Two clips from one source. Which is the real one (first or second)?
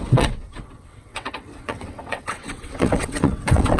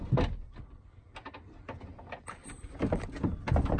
second